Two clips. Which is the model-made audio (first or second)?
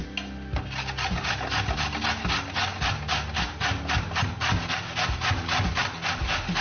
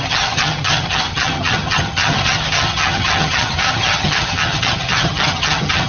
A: second